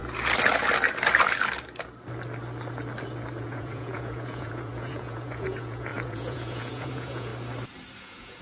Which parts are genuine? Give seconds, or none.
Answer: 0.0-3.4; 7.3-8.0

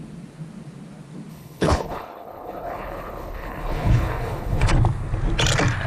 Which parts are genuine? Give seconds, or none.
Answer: 0.0-1.3; 4.7-5.9

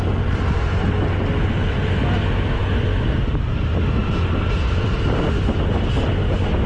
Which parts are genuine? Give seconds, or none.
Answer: 0.0-6.7

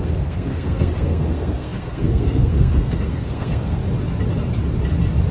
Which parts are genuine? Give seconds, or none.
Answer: 3.8-5.3

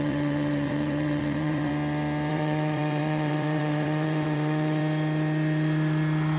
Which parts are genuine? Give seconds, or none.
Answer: 1.7-2.3; 4.8-6.4

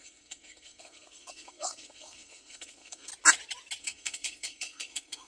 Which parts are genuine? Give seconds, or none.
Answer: 3.1-3.8

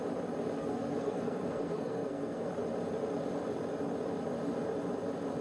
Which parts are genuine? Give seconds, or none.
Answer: 0.0-0.6; 2.5-5.4